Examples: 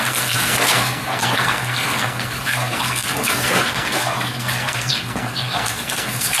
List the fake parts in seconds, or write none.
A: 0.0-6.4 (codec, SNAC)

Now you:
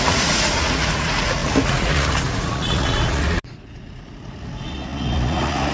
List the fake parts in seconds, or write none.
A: 0.0-5.7 (vocoder, Vocos)

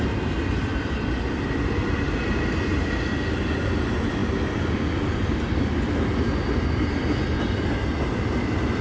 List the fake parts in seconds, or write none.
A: none

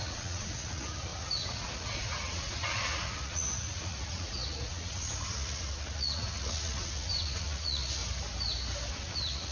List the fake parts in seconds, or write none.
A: 0.0-8.0 (vocoder, Vocos); 8.9-9.5

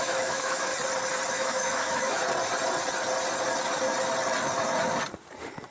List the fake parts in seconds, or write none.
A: 0.0-0.7 (autoencoder, DAC-VAE); 1.3-2.2